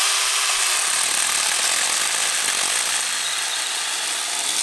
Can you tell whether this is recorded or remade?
recorded